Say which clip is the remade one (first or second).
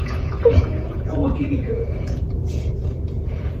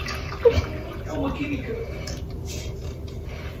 first